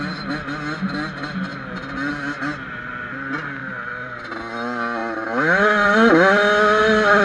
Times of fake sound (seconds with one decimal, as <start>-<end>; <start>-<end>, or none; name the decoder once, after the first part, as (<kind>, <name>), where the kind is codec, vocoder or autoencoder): 3.6-4.2 (vocoder, BigVGAN v2)